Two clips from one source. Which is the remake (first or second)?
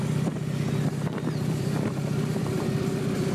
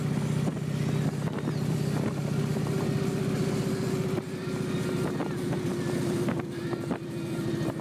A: first